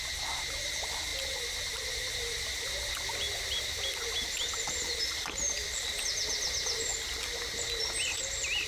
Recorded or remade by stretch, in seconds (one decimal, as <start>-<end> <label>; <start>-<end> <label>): 0.0-1.1 remade; 1.1-4.4 recorded; 4.4-6.9 remade; 6.9-7.5 recorded; 7.5-8.7 remade